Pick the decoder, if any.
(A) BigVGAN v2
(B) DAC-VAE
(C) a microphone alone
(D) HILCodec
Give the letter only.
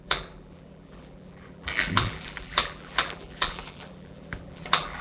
A